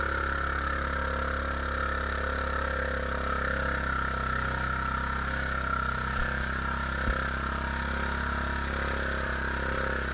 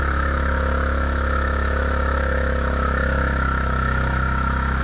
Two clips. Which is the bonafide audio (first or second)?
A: first